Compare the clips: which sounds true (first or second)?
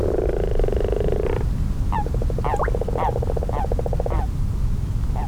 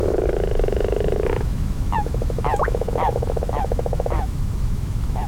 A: first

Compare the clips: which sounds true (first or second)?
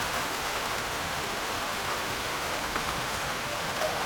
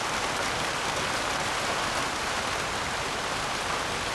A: second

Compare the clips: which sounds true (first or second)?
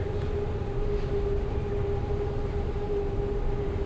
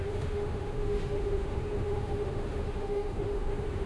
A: first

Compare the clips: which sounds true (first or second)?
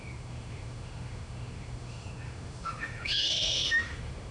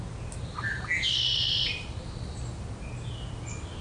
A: second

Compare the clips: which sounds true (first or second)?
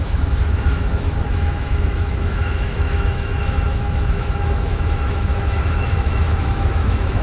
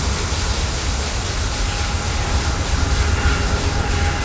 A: second